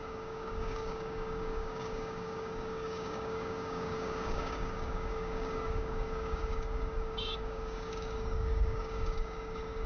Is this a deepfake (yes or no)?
yes